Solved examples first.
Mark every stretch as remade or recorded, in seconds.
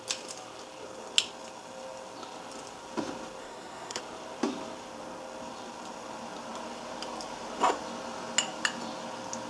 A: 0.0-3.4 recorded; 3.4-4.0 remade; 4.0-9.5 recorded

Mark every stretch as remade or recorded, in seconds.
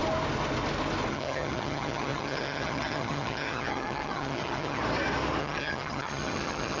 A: 0.0-1.1 recorded; 1.1-4.8 remade; 4.8-5.4 recorded; 5.4-6.8 remade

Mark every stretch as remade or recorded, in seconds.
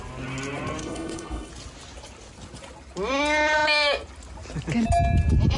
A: 0.0-0.8 recorded; 0.8-1.5 remade; 1.5-5.6 recorded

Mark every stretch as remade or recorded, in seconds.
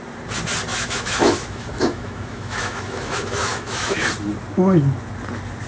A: 0.0-0.7 recorded; 0.7-4.1 remade; 4.1-5.7 recorded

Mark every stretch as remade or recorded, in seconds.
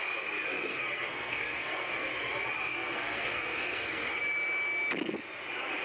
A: 0.0-0.7 recorded; 0.7-2.1 remade; 2.1-2.7 recorded; 2.7-4.2 remade; 4.2-5.8 recorded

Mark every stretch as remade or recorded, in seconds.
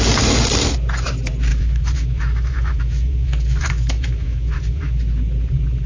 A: 0.0-1.5 recorded; 1.5-5.0 remade; 5.0-5.9 recorded